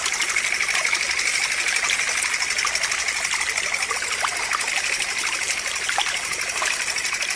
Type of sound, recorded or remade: recorded